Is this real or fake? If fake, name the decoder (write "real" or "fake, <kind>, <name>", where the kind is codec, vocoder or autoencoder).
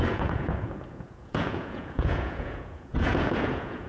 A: fake, vocoder, Vocos